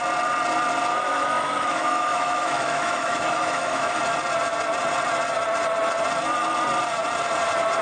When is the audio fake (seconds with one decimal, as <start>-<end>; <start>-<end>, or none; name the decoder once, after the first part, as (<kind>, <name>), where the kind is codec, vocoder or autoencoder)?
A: 0.9-4.0 (autoencoder, DAC-VAE)